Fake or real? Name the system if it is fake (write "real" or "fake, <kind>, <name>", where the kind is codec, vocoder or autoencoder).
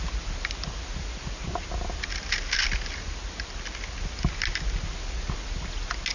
real